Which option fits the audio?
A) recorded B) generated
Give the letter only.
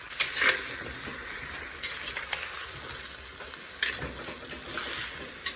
A